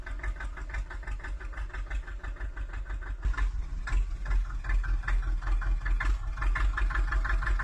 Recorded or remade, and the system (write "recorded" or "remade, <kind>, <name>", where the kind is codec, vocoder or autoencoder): recorded